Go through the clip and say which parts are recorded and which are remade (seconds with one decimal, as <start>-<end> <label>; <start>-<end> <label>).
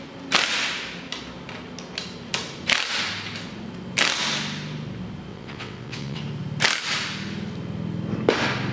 0.0-5.3 recorded; 5.3-6.2 remade; 6.2-8.7 recorded